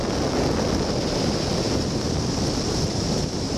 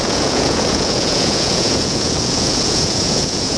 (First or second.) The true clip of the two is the first